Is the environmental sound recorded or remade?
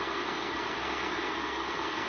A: remade